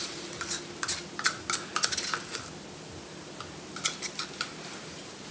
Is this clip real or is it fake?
real